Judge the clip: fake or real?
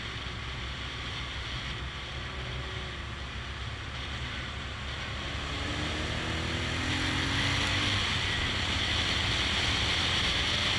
real